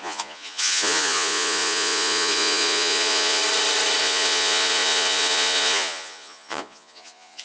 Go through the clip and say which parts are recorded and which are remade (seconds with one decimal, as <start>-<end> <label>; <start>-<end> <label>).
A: 0.0-3.4 remade; 3.4-4.0 recorded; 4.0-7.4 remade